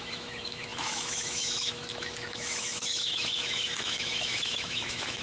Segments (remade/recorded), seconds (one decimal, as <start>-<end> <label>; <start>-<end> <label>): 0.0-5.2 remade